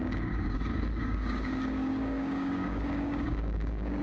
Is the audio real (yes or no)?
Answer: no